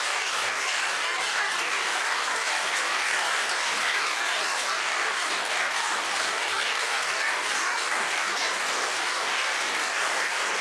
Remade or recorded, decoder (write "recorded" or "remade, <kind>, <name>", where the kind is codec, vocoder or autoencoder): remade, codec, DAC